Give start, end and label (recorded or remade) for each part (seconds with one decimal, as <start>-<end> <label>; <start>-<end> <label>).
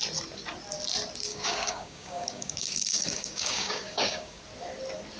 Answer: 0.0-1.3 recorded; 1.3-4.4 remade; 4.4-5.2 recorded